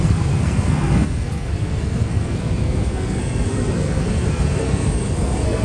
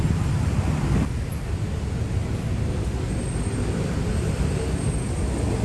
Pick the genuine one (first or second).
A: second